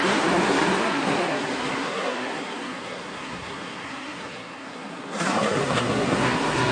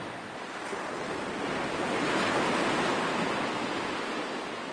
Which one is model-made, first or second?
first